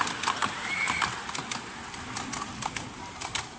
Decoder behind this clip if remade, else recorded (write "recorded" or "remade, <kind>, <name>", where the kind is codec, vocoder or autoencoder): recorded